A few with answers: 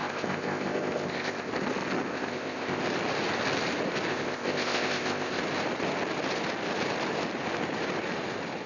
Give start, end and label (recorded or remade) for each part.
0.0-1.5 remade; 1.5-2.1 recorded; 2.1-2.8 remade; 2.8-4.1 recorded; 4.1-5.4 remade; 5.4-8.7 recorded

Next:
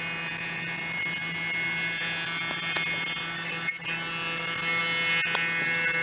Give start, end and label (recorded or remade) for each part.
0.0-6.0 recorded

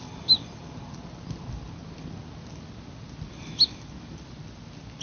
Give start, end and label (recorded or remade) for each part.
0.0-5.0 recorded

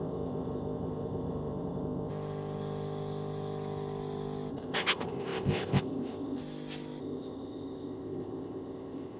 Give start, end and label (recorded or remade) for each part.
0.0-2.1 remade; 2.1-4.5 recorded; 4.5-6.4 remade; 6.4-7.0 recorded; 7.0-9.2 remade